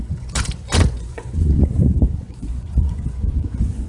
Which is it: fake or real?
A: fake